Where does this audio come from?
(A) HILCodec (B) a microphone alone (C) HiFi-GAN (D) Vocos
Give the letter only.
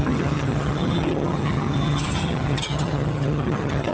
C